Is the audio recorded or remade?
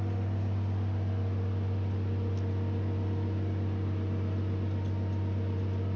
recorded